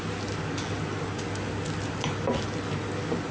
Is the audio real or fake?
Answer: real